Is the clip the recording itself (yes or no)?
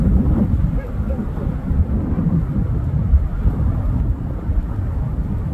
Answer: yes